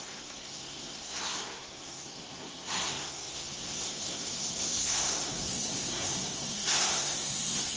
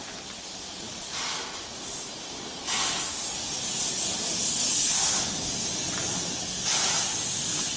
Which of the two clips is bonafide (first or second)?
second